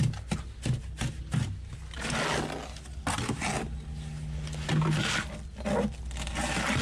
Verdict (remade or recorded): recorded